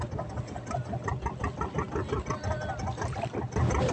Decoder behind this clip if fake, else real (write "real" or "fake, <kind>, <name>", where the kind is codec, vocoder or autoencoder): real